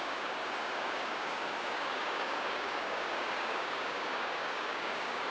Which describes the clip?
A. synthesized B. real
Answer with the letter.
A